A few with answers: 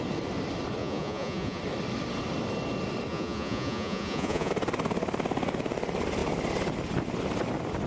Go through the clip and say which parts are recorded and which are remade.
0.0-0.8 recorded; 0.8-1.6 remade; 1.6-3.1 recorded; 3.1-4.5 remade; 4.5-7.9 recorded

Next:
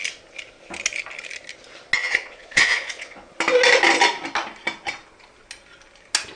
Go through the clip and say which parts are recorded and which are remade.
0.0-2.0 recorded; 2.0-3.3 remade; 3.3-6.4 recorded

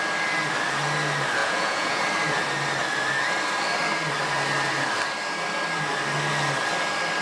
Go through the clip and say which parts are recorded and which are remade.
0.0-1.4 recorded; 1.4-2.0 remade; 2.0-7.2 recorded

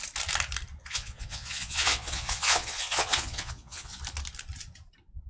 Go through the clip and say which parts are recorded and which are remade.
0.0-0.8 recorded; 0.8-4.0 remade; 4.0-5.3 recorded

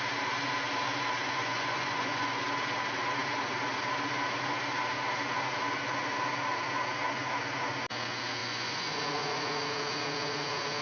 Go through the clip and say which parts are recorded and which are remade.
0.0-1.2 recorded; 1.2-2.4 remade; 2.4-8.4 recorded; 8.4-9.5 remade; 9.5-10.8 recorded

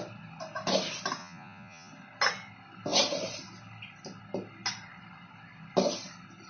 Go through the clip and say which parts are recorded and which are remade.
0.0-1.2 recorded; 1.2-1.9 remade; 1.9-6.5 recorded